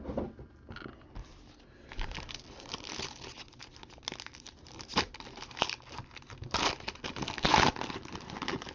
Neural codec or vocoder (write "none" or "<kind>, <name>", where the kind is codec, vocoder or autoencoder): none